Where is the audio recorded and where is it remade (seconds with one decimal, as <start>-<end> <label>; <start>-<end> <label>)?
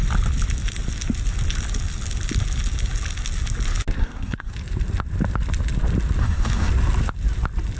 0.0-4.0 recorded; 4.0-4.5 remade; 4.5-6.2 recorded; 6.2-6.7 remade; 6.7-7.8 recorded